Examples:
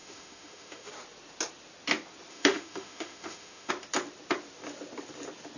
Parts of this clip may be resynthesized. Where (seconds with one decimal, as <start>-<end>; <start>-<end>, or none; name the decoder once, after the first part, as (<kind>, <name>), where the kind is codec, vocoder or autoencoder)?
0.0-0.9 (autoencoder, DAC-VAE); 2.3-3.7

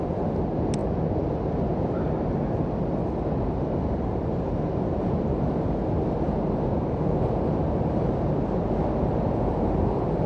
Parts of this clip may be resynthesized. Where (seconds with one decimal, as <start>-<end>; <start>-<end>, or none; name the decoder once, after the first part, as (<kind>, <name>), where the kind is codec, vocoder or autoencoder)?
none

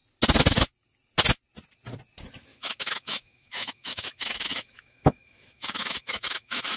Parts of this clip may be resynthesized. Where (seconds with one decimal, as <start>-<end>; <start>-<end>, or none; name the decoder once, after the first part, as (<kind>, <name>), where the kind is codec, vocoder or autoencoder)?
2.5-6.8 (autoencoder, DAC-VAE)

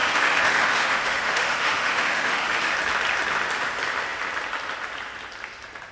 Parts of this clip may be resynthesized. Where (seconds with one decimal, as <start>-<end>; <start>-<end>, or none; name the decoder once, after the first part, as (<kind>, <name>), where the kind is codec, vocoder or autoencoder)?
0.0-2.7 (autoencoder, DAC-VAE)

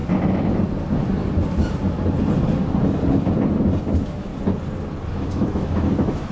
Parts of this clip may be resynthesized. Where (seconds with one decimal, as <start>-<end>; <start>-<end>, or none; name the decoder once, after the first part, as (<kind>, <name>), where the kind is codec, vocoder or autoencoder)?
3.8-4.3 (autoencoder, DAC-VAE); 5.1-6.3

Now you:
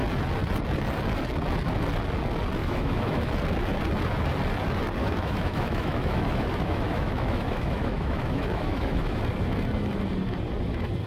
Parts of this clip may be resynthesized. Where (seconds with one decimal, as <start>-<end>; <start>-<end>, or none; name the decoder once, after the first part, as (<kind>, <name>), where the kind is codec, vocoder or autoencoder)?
2.6-3.3 (autoencoder, DAC-VAE); 5.0-9.2